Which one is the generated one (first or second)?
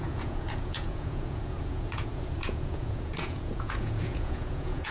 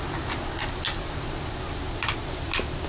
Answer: first